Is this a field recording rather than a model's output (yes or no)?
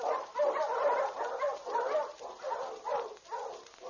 no